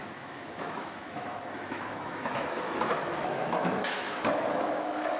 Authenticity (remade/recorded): remade